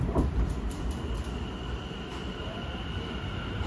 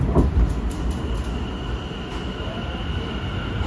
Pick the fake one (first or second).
first